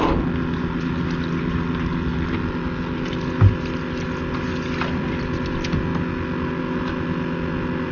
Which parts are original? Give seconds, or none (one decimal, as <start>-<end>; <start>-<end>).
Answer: 0.0-7.9